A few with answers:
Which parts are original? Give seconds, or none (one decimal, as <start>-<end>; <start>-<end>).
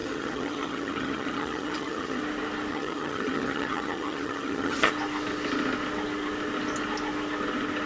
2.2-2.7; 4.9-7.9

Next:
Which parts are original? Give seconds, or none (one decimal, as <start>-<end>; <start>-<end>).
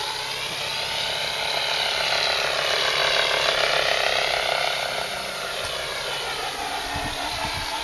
0.0-7.8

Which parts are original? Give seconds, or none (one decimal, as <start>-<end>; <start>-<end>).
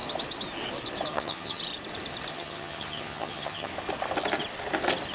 0.0-1.1; 1.6-2.3; 3.7-5.1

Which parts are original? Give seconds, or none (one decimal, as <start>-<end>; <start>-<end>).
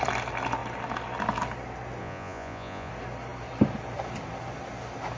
0.0-2.0; 2.9-5.2